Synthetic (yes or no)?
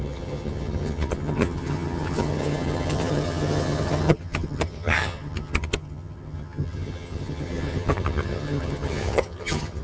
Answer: yes